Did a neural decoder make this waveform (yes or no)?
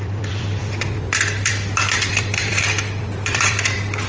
yes